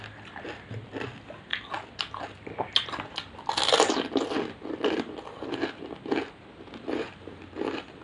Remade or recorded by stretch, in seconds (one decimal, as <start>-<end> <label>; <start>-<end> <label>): 0.0-8.0 recorded